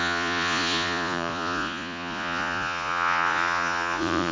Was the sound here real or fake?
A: fake